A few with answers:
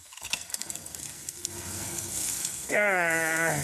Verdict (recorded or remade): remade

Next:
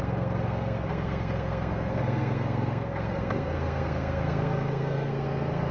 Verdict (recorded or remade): remade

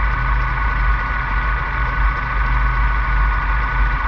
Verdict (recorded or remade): recorded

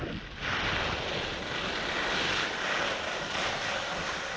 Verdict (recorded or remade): recorded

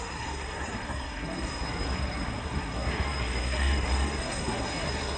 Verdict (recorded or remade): remade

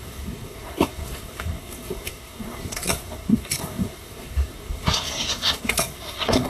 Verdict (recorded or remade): remade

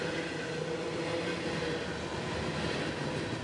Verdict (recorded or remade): recorded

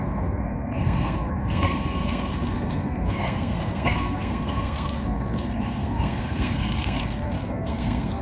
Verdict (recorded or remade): remade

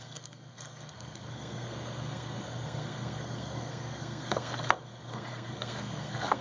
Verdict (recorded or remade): remade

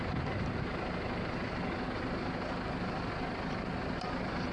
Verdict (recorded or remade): recorded